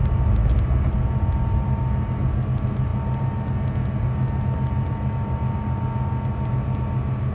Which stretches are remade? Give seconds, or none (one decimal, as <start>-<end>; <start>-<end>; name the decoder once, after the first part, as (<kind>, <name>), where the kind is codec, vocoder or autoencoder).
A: none